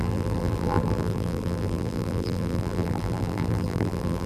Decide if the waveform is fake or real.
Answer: fake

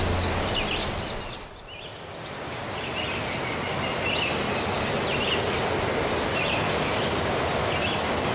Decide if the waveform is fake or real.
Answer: real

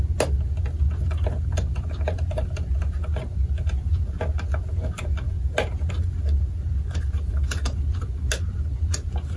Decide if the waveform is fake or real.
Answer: real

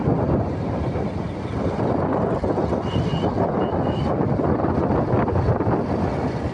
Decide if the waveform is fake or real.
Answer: real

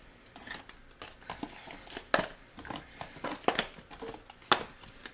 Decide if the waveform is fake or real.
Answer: real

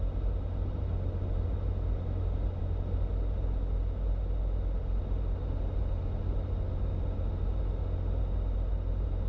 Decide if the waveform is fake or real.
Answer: real